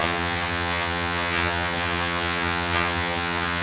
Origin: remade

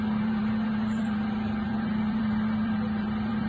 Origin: remade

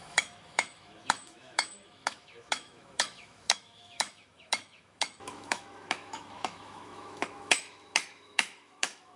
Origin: remade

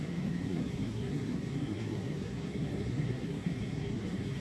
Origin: remade